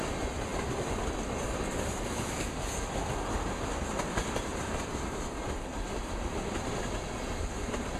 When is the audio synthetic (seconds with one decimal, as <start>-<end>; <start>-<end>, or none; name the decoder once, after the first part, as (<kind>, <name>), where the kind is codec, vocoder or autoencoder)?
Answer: 4.5-6.1 (vocoder, BigVGAN v2)